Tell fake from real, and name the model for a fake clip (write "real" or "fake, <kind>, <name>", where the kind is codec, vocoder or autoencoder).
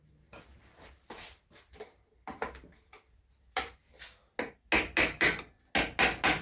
real